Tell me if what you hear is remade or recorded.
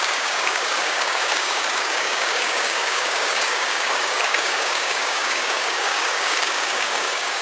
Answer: remade